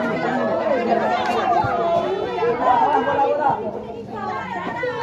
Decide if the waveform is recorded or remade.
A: recorded